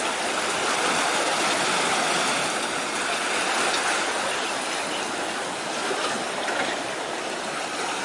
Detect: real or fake real